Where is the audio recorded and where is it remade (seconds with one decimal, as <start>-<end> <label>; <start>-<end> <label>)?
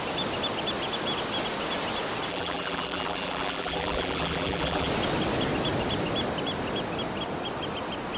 0.0-2.3 recorded; 2.3-4.9 remade; 4.9-8.2 recorded